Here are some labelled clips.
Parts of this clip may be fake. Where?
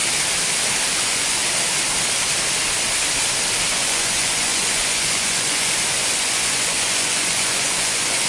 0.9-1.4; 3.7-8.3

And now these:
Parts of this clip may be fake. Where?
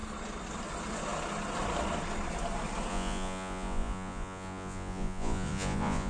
2.9-6.1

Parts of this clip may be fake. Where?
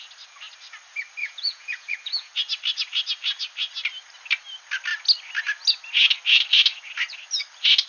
1.2-2.3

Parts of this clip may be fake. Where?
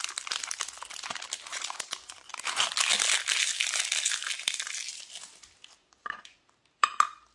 1.5-2.3; 5.8-6.4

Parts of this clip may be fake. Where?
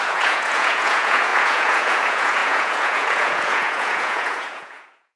0.0-5.2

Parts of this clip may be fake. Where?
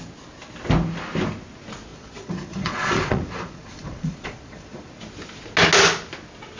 1.9-4.9